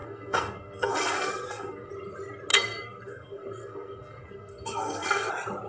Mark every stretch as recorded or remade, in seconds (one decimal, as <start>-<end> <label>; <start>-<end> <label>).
0.0-1.9 remade; 1.9-2.5 recorded; 2.5-5.3 remade; 5.3-5.7 recorded